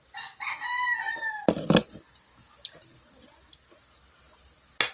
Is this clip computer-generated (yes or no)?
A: no